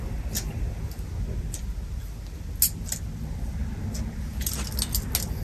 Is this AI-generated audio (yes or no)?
no